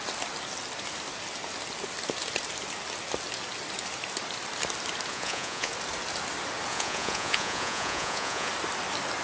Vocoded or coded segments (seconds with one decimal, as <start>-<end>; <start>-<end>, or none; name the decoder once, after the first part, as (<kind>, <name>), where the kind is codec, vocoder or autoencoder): 5.1-5.7 (vocoder, Vocos); 6.7-8.5